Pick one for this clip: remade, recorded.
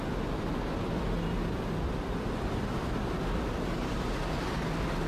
recorded